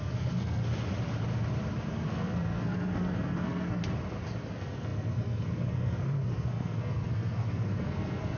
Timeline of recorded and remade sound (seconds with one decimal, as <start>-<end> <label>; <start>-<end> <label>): 0.0-0.6 remade; 0.6-1.9 recorded; 1.9-3.8 remade; 3.8-4.5 recorded; 4.5-8.4 remade